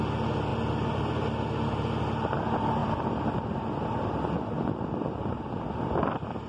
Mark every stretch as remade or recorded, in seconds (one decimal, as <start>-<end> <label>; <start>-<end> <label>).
0.0-0.5 recorded; 0.5-1.1 remade; 1.1-2.8 recorded; 2.8-5.3 remade; 5.3-6.5 recorded